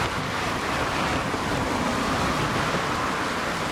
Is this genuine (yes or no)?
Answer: yes